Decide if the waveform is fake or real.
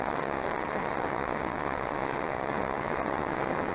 fake